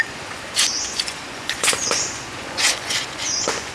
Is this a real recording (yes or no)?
no